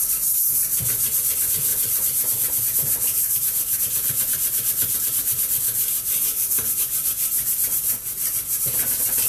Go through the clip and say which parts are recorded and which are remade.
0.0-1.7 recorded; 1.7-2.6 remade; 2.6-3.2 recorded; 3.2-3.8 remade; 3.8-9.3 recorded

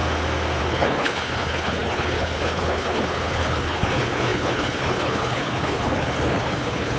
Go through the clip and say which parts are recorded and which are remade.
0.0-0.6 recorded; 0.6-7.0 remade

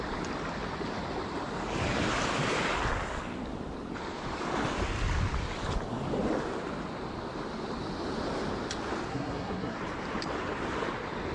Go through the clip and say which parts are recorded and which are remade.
0.0-9.1 recorded; 9.1-9.8 remade; 9.8-11.3 recorded

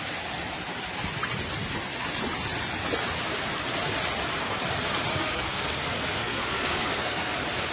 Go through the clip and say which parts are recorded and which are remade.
0.0-5.1 recorded; 5.1-7.3 remade; 7.3-7.7 recorded